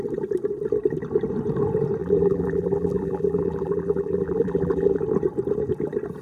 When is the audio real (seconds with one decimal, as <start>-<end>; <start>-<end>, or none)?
0.0-2.0; 5.0-6.2